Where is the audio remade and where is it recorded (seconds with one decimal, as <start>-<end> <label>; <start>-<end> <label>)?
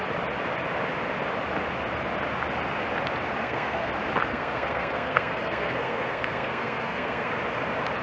0.0-3.4 recorded; 3.4-3.9 remade; 3.9-4.3 recorded; 4.3-7.3 remade; 7.3-8.0 recorded